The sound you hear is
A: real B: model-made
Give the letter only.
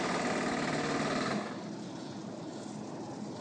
A